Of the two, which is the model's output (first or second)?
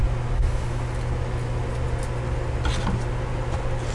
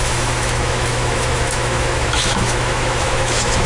second